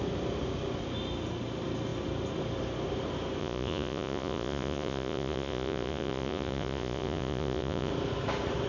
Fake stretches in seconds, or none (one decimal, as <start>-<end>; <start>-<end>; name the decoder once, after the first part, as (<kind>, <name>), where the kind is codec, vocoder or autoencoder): 3.4-7.9 (vocoder, Vocos)